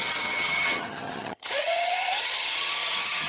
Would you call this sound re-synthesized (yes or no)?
yes